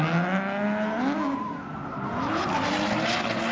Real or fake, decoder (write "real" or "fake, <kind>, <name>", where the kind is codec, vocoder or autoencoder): real